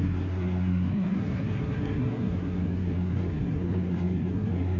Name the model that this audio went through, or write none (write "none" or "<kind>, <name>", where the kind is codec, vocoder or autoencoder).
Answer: codec, SNAC